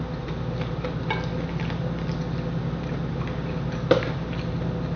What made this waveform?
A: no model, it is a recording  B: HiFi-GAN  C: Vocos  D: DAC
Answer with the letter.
A